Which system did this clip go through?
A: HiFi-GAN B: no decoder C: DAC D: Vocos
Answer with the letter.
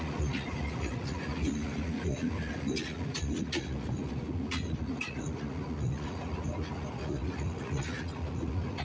D